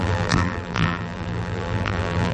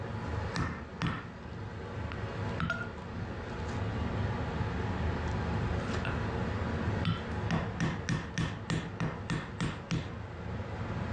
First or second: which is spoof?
first